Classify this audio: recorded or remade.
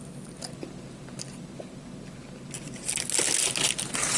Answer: recorded